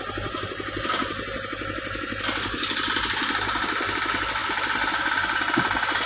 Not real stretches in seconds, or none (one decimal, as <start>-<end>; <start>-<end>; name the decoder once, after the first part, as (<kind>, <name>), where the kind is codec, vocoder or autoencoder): none